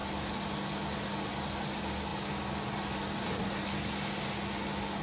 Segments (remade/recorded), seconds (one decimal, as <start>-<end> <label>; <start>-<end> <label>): 0.0-5.0 recorded